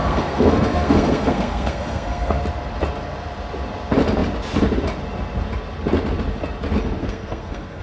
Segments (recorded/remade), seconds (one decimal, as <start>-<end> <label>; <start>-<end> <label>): 0.0-2.4 remade; 2.4-7.0 recorded; 7.0-7.8 remade